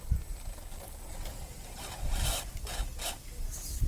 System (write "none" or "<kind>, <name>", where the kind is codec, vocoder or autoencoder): none